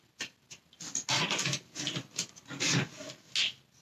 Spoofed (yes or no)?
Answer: no